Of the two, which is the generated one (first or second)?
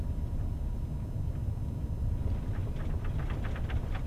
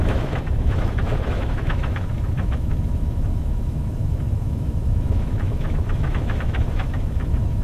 second